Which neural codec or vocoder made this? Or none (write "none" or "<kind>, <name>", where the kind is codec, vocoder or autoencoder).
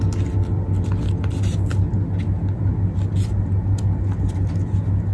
none